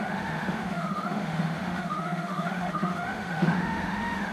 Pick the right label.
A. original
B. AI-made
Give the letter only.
B